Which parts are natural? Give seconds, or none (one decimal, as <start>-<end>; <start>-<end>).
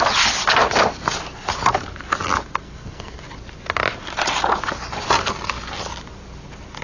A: 0.0-2.6; 3.2-6.8